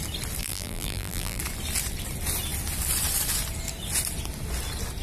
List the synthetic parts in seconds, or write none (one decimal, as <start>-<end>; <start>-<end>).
0.4-1.4